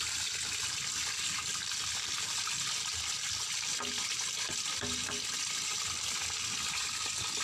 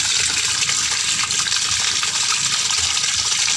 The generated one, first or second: first